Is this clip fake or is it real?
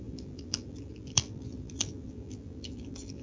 fake